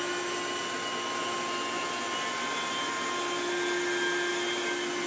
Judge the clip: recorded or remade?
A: recorded